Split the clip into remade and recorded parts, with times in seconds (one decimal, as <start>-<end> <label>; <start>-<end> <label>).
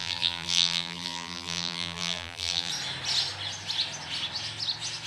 0.0-2.7 remade; 2.7-5.1 recorded